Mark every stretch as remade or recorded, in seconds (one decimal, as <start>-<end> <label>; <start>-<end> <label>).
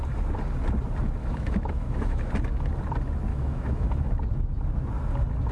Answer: 0.0-1.2 recorded; 1.2-2.3 remade; 2.3-3.3 recorded; 3.3-4.1 remade; 4.1-5.5 recorded